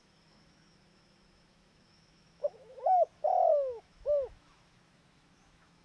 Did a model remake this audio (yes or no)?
yes